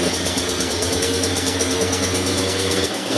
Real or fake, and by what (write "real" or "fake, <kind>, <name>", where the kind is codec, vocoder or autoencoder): fake, codec, SNAC